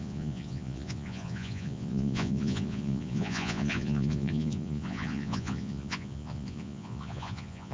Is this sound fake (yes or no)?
yes